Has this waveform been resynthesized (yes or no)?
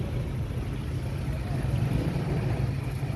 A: no